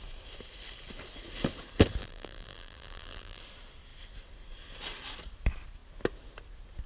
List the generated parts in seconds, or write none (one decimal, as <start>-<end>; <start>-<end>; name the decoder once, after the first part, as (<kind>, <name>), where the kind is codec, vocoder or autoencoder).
2.0-3.4 (vocoder, BigVGAN v2)